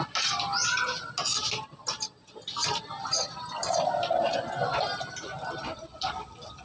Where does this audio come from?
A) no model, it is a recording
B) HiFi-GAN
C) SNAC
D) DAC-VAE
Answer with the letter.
A